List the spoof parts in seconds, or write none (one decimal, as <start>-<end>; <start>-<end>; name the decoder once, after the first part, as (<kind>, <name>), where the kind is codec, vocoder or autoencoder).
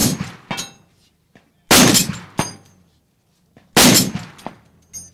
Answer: none